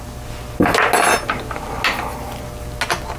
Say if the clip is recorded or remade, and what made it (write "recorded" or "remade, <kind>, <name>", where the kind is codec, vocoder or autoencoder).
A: recorded